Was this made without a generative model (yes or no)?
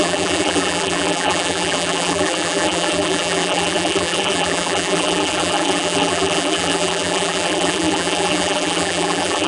no